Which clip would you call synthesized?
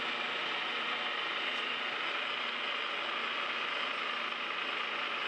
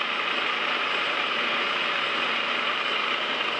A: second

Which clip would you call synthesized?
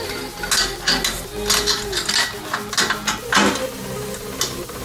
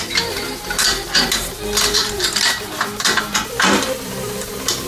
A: second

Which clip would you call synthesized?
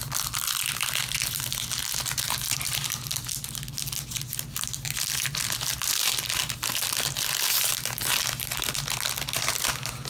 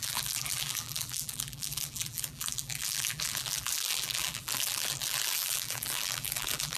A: second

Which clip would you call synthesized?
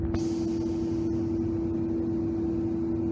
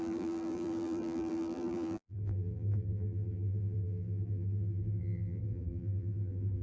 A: second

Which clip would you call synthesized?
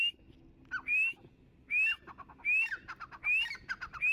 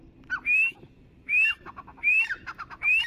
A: second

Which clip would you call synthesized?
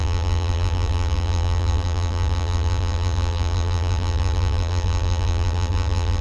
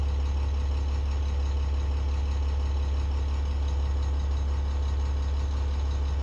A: first